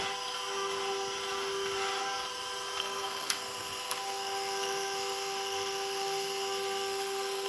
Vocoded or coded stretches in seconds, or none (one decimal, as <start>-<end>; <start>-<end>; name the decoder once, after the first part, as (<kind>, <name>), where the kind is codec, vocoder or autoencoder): 2.8-7.5 (codec, SNAC)